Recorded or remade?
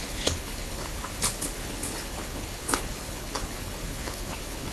remade